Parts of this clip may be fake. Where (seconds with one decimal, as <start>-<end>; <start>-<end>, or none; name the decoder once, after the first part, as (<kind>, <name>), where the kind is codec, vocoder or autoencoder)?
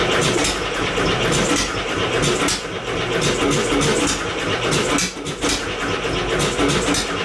none